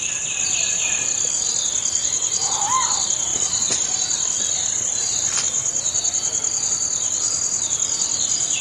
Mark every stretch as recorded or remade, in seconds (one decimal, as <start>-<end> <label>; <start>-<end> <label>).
0.0-3.3 recorded; 3.3-4.4 remade; 4.4-8.6 recorded